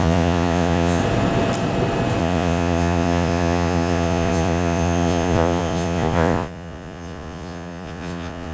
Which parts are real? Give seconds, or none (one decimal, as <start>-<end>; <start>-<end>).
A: 1.0-2.2